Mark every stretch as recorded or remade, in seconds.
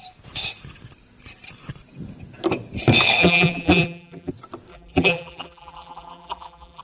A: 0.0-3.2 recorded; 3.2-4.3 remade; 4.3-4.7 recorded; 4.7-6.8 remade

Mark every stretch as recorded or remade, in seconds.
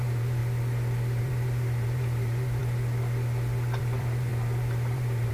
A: 0.0-0.4 remade; 0.4-1.2 recorded; 1.2-2.6 remade; 2.6-3.8 recorded; 3.8-5.3 remade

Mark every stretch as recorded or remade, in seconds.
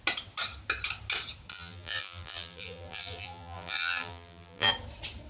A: 0.0-1.5 recorded; 1.5-4.7 remade; 4.7-5.3 recorded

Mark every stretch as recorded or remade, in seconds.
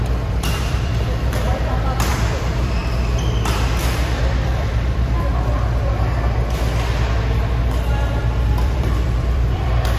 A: 0.0-1.5 remade; 1.5-2.1 recorded; 2.1-2.8 remade; 2.8-3.8 recorded; 3.8-5.3 remade; 5.3-8.5 recorded; 8.5-10.0 remade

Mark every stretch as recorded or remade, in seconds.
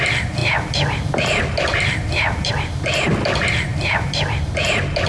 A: 0.0-3.7 recorded; 3.7-4.5 remade; 4.5-5.1 recorded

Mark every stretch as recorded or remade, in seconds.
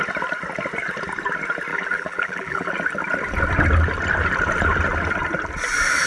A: 0.0-1.7 recorded; 1.7-2.7 remade; 2.7-6.1 recorded